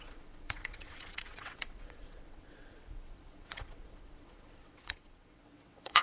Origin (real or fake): fake